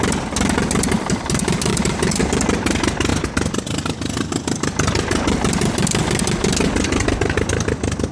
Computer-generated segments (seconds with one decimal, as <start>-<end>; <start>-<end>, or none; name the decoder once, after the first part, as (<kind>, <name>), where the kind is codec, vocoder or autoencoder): 1.7-2.2 (vocoder, BigVGAN v2)